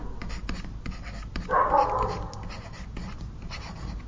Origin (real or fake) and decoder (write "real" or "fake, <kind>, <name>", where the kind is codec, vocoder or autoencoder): real